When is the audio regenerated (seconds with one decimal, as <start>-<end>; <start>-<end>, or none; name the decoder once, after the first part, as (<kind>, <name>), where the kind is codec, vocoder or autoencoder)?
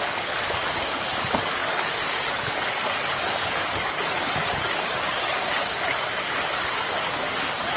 0.0-7.8 (codec, DAC)